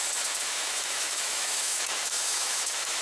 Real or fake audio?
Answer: fake